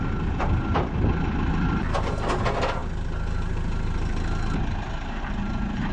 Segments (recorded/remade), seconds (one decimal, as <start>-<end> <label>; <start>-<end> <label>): 0.0-5.9 recorded